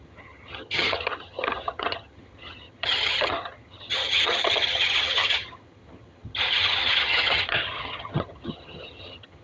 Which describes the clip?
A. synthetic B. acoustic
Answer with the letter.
A